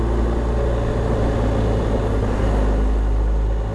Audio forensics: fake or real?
real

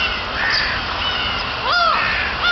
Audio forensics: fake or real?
real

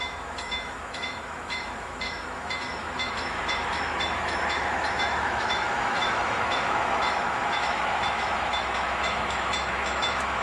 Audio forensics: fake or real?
fake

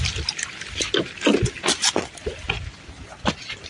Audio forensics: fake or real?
real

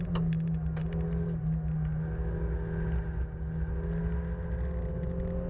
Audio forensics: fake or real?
real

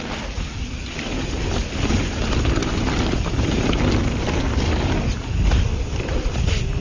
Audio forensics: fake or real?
real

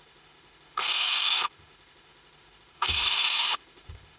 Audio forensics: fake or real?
fake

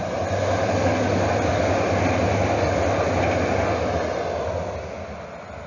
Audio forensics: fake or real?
real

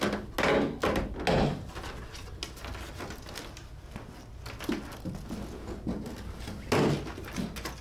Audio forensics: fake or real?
real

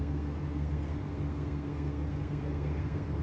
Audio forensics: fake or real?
fake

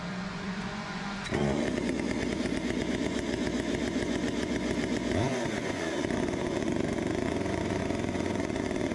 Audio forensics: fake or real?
fake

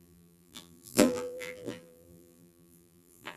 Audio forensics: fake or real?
fake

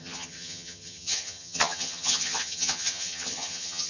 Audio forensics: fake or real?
fake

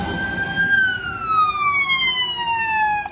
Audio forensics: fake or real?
real